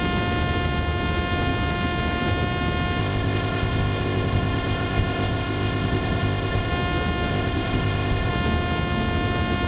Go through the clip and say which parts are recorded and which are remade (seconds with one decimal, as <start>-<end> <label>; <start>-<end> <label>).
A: 0.0-3.0 recorded; 3.0-6.7 remade; 6.7-7.3 recorded; 7.3-8.3 remade; 8.3-9.7 recorded